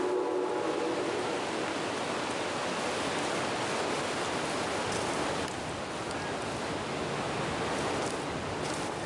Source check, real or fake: real